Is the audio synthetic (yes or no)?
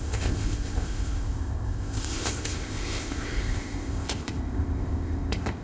yes